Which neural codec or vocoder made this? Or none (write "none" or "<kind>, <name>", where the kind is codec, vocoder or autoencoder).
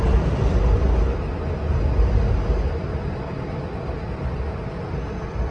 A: none